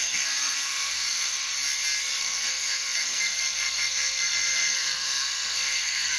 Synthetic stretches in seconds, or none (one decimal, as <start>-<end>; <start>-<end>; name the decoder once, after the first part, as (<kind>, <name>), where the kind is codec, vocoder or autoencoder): 0.0-1.5 (codec, SNAC); 2.2-6.2